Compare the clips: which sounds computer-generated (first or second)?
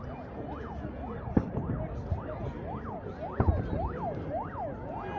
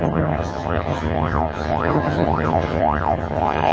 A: second